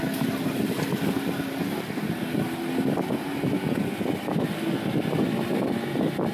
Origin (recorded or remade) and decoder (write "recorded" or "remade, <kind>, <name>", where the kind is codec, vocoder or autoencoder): recorded